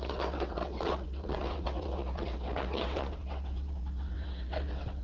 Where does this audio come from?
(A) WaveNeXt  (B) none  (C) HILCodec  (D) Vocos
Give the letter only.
A